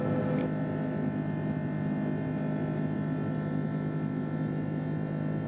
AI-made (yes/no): no